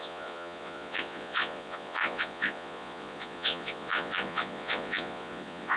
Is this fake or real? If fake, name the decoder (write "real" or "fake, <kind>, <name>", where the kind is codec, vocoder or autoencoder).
fake, vocoder, Vocos